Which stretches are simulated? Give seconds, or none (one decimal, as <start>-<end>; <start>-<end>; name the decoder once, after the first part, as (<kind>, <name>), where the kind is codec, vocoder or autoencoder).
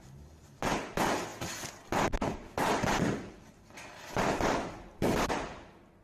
none